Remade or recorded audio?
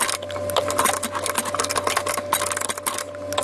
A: recorded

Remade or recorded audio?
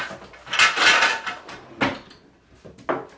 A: recorded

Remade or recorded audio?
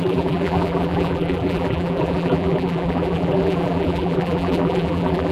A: remade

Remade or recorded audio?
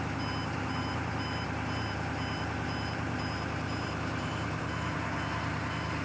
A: remade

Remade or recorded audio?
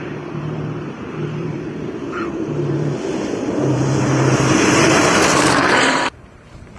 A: remade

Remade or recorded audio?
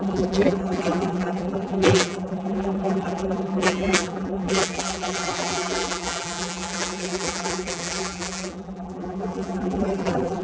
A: remade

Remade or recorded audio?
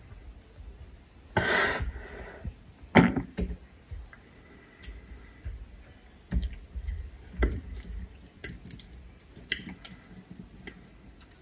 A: recorded